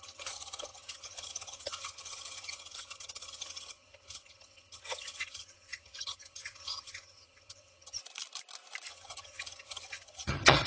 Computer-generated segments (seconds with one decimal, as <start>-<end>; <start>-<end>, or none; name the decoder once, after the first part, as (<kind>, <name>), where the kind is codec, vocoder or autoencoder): 0.0-8.0 (vocoder, HiFi-GAN); 8.9-10.7